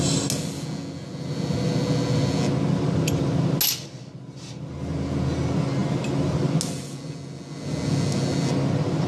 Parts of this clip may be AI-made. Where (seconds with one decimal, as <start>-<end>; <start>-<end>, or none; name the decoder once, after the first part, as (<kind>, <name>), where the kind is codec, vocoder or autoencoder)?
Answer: none